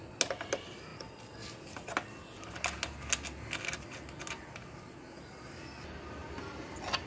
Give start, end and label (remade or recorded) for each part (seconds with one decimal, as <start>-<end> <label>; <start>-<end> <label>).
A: 0.0-7.1 recorded